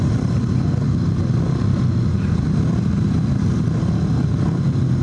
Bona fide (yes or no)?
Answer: yes